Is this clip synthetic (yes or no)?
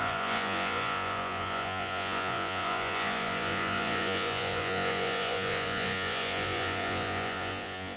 yes